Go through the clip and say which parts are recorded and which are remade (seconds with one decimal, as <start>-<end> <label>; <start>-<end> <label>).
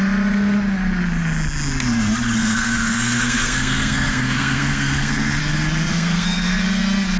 0.0-2.4 recorded; 2.4-5.4 remade; 5.4-5.9 recorded; 5.9-6.8 remade; 6.8-7.2 recorded